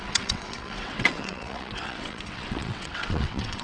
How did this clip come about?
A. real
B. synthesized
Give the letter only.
B